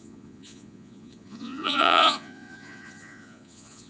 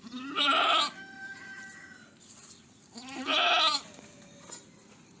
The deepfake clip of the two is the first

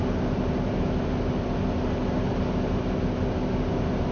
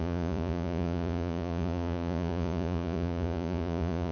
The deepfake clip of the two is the second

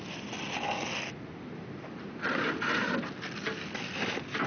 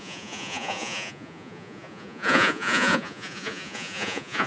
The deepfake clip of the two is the second